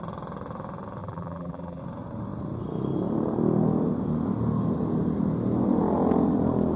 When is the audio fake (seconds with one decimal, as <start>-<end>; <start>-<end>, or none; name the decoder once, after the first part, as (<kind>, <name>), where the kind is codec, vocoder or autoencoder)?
1.0-1.8 (vocoder, BigVGAN v2)